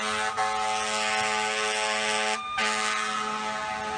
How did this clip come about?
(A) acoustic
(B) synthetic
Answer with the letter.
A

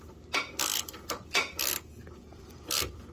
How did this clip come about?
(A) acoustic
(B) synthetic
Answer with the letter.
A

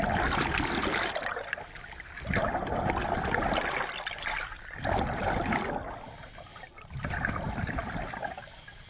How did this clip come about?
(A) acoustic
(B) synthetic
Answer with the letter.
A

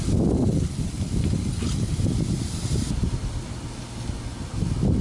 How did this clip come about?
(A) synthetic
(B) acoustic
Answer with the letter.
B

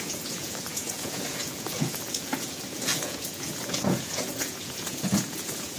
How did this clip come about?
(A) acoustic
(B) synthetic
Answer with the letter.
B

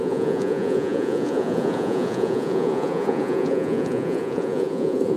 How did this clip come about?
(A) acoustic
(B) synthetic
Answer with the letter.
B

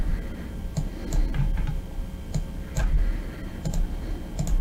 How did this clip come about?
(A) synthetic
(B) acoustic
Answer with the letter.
B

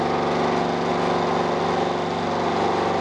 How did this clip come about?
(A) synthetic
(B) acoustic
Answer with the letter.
B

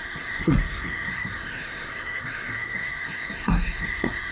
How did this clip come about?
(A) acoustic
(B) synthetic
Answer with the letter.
B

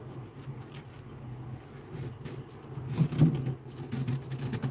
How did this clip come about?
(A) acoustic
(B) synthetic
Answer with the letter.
A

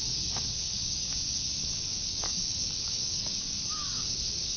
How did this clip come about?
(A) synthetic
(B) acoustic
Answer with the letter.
A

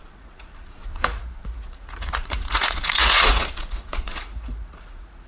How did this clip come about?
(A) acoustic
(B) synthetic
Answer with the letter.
B